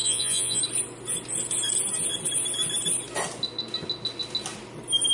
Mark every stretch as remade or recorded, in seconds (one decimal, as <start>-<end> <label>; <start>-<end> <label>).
0.0-0.6 remade; 0.6-5.1 recorded

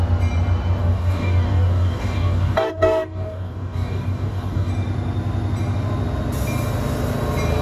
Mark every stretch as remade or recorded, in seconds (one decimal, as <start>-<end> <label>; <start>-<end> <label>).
0.0-0.8 recorded; 0.8-4.7 remade; 4.7-7.6 recorded

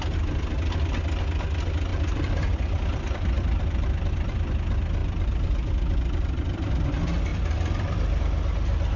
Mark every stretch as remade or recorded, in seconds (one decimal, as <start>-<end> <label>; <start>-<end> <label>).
0.0-1.9 recorded; 1.9-4.5 remade; 4.5-5.0 recorded; 5.0-6.7 remade; 6.7-7.3 recorded; 7.3-8.2 remade; 8.2-9.0 recorded

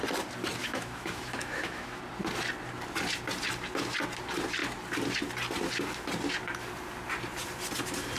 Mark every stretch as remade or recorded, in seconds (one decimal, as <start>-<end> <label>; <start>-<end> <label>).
0.0-0.6 recorded; 0.6-2.0 remade; 2.0-8.2 recorded

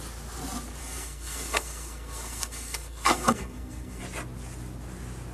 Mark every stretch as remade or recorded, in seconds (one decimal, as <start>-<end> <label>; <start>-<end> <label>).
0.0-0.8 recorded; 0.8-4.0 remade; 4.0-5.3 recorded

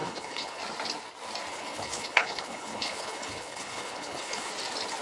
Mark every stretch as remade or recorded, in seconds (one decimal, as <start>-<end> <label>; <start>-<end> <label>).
0.0-0.6 remade; 0.6-1.5 recorded; 1.5-4.5 remade; 4.5-5.0 recorded